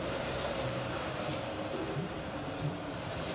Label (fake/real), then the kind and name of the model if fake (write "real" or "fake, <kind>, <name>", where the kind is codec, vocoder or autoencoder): fake, vocoder, BigVGAN v2